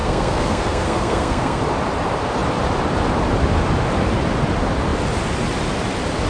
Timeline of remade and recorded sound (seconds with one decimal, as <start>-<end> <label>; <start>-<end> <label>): 0.0-1.6 remade; 1.6-6.3 recorded